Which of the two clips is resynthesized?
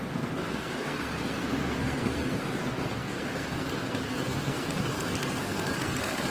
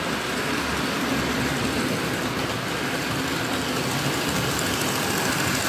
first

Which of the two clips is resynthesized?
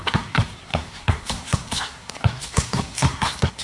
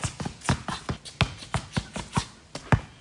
first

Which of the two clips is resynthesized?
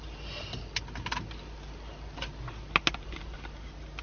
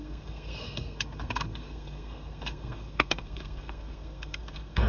second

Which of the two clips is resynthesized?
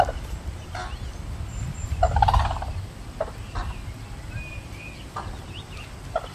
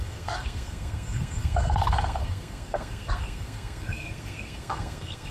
second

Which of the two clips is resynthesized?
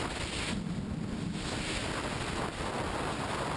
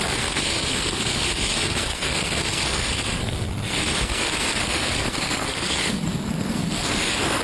second